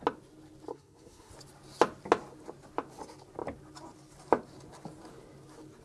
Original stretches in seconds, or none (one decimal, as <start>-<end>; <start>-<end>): 0.0-0.7; 1.3-5.8